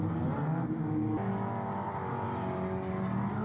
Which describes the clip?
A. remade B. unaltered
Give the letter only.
B